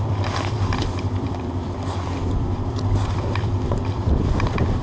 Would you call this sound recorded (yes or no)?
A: no